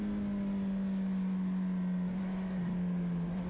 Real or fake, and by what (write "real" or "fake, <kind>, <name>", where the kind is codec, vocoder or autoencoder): real